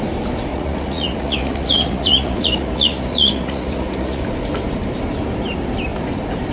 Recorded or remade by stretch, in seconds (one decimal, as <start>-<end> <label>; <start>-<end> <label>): 0.0-0.5 recorded; 0.5-4.2 remade; 4.2-6.5 recorded